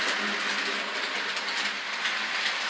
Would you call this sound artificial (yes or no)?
no